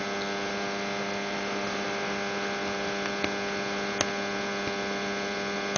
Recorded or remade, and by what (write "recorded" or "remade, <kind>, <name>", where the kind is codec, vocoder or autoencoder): recorded